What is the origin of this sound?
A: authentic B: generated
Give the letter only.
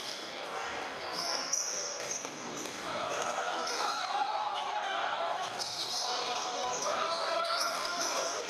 B